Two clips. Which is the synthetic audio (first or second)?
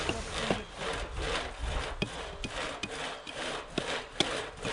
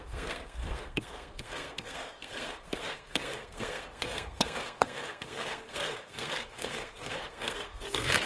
second